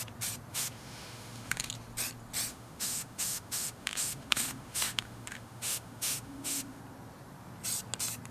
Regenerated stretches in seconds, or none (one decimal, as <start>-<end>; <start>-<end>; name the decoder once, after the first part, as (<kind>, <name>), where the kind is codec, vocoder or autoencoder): 0.5-1.7 (autoencoder, DAC-VAE); 2.5-6.8